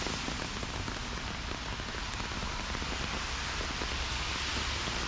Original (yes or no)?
yes